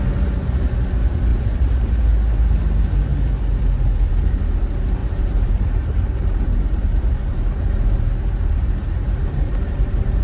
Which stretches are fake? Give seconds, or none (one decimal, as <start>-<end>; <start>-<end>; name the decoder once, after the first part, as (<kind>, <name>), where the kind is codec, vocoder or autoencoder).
1.3-1.9 (vocoder, BigVGAN v2); 5.0-10.2